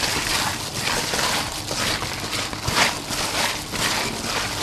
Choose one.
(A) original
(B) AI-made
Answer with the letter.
A